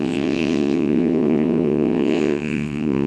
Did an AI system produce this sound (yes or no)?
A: yes